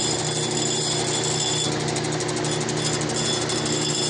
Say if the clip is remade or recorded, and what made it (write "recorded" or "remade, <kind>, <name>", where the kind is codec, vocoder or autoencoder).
recorded